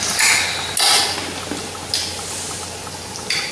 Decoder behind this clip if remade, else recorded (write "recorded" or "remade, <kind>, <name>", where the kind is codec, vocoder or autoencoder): recorded